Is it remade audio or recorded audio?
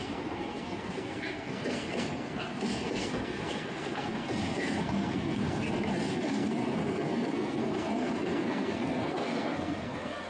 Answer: remade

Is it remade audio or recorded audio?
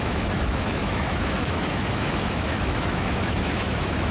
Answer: remade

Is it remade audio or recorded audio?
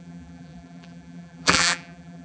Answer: remade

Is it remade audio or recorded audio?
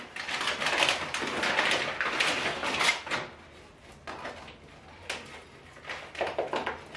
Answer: recorded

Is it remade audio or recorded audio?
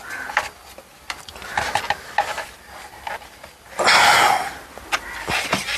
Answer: recorded